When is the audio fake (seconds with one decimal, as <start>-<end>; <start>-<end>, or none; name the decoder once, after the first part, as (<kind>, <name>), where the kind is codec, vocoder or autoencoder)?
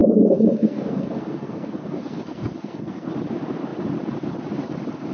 0.0-3.1 (codec, SNAC)